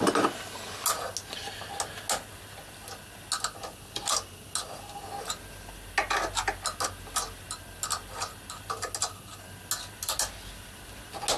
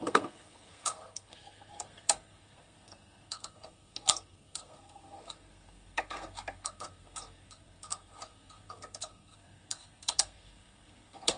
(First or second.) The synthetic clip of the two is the second